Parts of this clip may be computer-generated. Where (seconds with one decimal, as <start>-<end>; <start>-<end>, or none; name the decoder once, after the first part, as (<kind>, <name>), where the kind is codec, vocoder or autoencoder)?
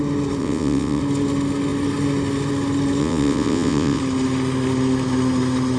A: 0.4-1.0 (vocoder, WaveNeXt); 3.0-4.0